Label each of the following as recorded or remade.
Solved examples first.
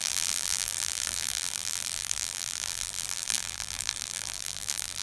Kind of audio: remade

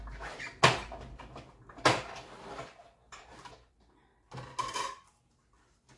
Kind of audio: recorded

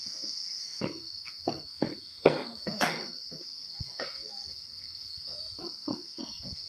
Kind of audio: remade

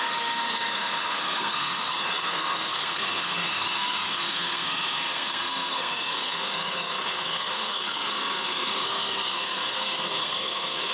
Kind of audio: remade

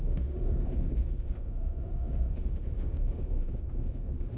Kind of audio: remade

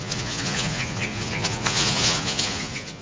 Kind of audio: remade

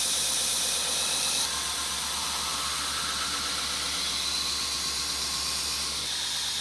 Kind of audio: recorded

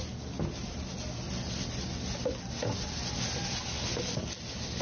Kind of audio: recorded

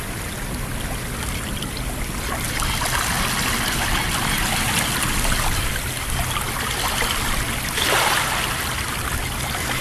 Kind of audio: recorded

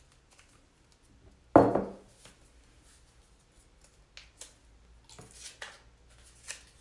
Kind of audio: recorded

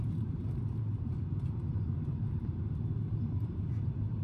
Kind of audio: remade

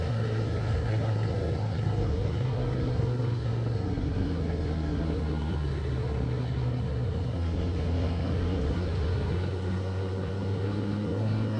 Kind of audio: remade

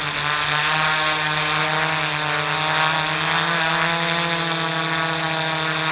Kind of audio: recorded